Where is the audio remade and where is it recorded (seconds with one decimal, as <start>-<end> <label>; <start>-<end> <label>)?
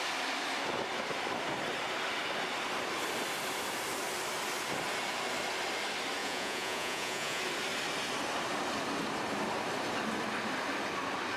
0.0-6.2 recorded; 6.2-7.4 remade; 7.4-11.4 recorded